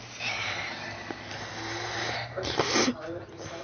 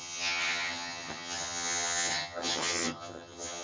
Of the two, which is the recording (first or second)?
first